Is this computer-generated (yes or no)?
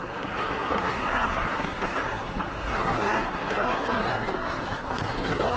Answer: yes